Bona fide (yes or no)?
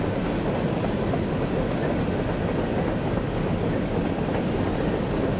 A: yes